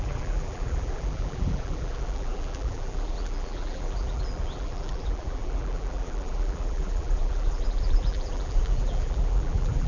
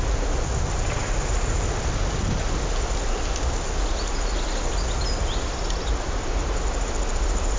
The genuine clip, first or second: second